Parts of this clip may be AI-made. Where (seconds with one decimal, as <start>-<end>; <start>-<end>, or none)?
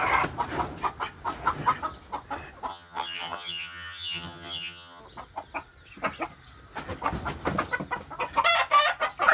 2.7-5.0